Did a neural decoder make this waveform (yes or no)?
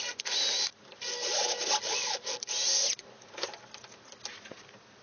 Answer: yes